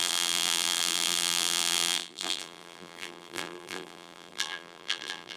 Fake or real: fake